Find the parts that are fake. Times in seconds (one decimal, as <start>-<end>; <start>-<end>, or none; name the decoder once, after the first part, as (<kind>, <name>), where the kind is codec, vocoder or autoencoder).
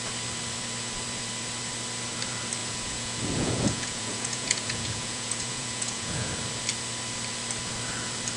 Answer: 2.6-6.3 (vocoder, Vocos)